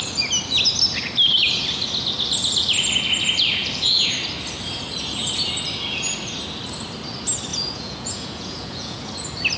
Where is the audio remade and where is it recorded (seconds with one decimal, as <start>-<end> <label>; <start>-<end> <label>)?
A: 0.0-7.5 recorded; 7.5-9.1 remade; 9.1-9.6 recorded

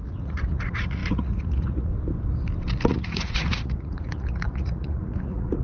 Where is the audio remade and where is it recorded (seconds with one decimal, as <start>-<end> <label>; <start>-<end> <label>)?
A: 0.0-1.9 remade; 1.9-2.9 recorded; 2.9-5.6 remade

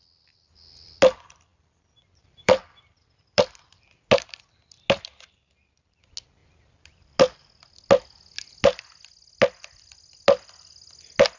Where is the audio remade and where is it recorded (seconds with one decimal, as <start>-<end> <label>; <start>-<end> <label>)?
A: 0.0-1.5 recorded; 1.5-2.6 remade; 2.6-11.4 recorded

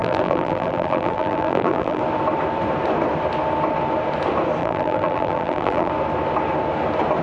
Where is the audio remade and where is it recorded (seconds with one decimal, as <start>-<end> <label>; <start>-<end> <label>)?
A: 0.0-2.0 remade; 2.0-4.6 recorded; 4.6-5.9 remade; 5.9-7.2 recorded

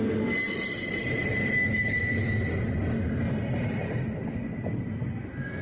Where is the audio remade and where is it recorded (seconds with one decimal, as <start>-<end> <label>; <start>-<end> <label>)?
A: 0.0-3.8 recorded; 3.8-5.6 remade

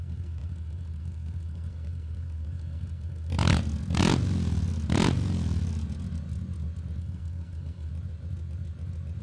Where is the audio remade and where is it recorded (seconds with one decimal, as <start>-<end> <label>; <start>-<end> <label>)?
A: 0.0-3.3 remade; 3.3-7.0 recorded; 7.0-7.9 remade; 7.9-9.2 recorded

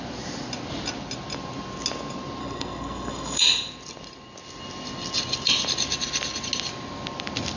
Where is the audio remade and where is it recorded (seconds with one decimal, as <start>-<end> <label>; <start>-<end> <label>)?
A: 0.0-2.4 recorded; 2.4-3.4 remade; 3.4-7.6 recorded